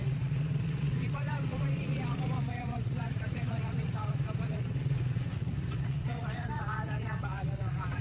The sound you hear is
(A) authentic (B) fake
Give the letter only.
B